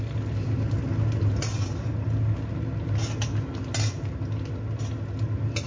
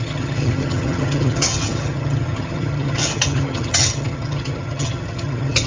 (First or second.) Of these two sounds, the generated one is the second